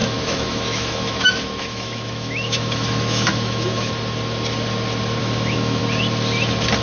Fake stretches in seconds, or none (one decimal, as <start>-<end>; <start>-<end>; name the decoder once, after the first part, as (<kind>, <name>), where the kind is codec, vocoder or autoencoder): 0.0-3.9 (autoencoder, DAC-VAE); 5.2-5.8